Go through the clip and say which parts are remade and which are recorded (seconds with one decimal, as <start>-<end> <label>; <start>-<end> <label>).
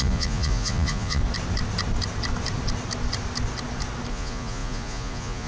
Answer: 0.0-1.2 remade; 1.2-4.1 recorded; 4.1-5.5 remade